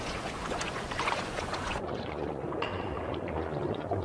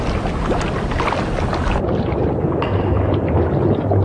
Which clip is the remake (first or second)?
first